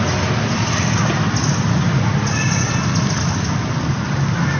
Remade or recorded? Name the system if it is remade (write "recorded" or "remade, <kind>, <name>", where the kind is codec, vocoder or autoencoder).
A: recorded